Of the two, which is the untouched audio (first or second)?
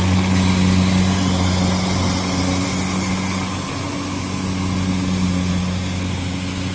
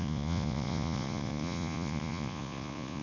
first